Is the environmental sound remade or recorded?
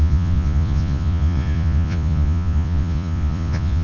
remade